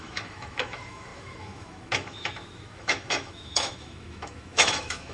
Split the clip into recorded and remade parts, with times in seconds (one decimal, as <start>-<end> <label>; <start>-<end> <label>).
0.0-5.1 remade